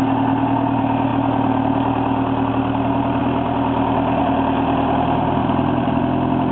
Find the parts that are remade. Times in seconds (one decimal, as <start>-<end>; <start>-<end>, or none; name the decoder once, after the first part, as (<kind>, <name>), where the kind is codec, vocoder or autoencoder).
5.4-6.0 (vocoder, BigVGAN v2)